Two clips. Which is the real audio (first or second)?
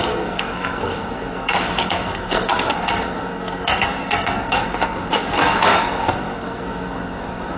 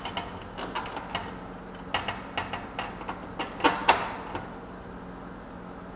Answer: second